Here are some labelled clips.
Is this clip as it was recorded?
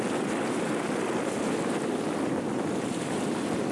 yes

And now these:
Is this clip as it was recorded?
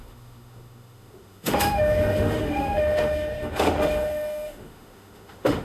no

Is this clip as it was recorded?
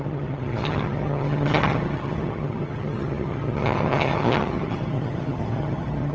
no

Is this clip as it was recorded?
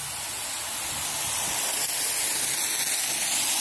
yes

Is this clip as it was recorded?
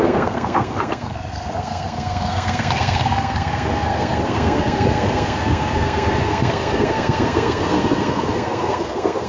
no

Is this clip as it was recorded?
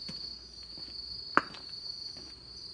yes